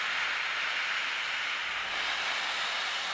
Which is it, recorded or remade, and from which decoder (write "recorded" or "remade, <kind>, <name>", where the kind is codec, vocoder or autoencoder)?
recorded